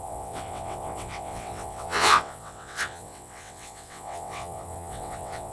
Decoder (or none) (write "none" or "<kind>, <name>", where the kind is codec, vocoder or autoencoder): vocoder, WaveNeXt